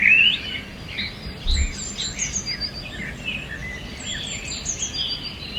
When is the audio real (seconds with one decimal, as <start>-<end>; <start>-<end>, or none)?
0.0-3.6